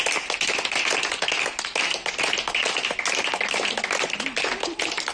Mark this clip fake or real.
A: real